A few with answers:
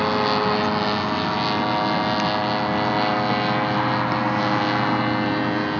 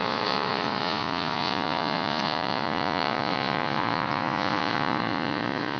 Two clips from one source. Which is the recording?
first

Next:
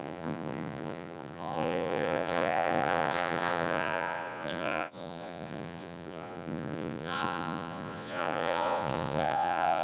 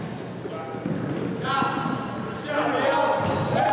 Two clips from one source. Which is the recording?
second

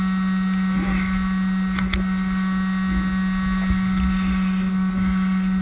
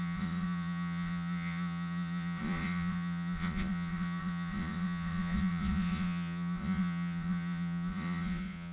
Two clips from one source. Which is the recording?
first